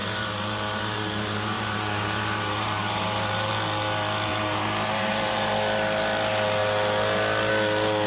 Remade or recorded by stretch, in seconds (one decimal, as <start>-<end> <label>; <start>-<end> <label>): 0.0-3.5 remade; 3.5-4.3 recorded; 4.3-5.5 remade; 5.5-8.1 recorded